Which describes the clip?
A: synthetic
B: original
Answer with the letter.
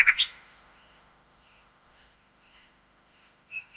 A